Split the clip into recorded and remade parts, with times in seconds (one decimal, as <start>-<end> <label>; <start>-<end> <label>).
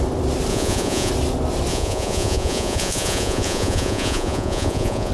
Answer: 0.0-0.5 recorded; 0.5-1.1 remade; 1.1-1.7 recorded; 1.7-5.1 remade